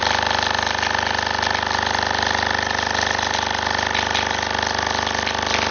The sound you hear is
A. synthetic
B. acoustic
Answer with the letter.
B